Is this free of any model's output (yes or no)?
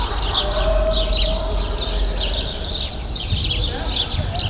yes